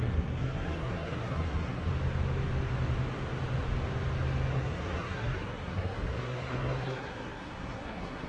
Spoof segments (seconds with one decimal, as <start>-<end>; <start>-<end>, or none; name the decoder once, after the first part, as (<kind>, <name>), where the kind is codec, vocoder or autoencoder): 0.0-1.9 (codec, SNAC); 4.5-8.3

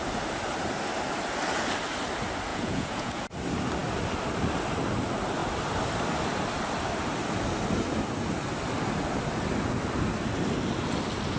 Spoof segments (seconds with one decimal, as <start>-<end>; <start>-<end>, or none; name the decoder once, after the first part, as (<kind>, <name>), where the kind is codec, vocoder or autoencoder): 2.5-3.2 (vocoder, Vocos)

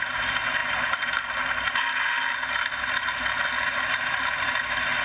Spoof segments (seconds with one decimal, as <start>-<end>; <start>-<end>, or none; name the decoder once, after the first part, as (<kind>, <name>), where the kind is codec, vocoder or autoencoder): none

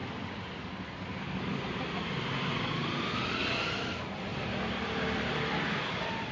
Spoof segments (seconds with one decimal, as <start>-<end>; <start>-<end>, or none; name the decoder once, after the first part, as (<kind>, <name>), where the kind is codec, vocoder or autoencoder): 0.0-1.0 (vocoder, BigVGAN v2); 2.8-3.6; 4.3-6.3